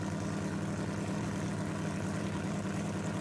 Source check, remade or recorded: recorded